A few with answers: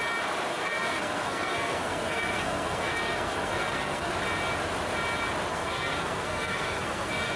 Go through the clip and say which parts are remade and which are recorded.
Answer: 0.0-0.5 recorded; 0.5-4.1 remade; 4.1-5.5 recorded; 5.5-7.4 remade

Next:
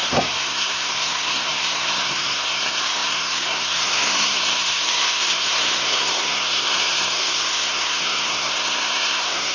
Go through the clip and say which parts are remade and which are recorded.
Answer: 0.0-9.5 remade

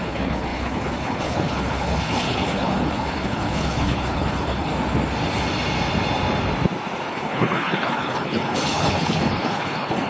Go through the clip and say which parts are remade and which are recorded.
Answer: 0.0-4.7 remade; 4.7-7.1 recorded; 7.1-10.1 remade